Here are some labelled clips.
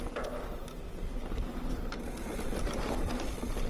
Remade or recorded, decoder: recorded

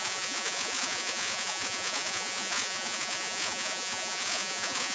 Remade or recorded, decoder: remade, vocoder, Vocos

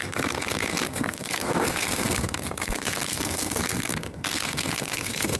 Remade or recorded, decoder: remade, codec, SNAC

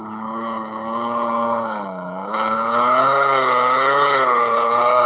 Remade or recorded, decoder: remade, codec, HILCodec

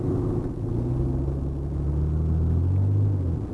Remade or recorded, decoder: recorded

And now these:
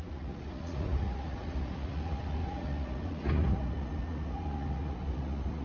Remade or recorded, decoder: remade, vocoder, Vocos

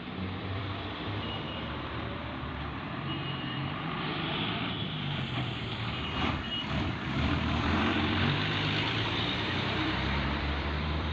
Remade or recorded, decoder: remade, vocoder, BigVGAN v2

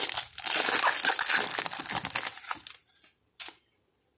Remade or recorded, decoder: recorded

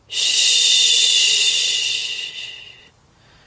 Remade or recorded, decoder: remade, vocoder, Vocos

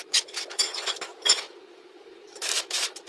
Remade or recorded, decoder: remade, autoencoder, DAC-VAE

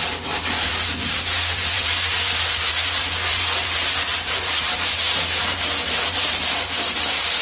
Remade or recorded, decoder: remade, vocoder, BigVGAN v2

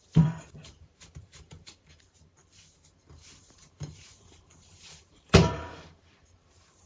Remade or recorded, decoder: remade, vocoder, BigVGAN v2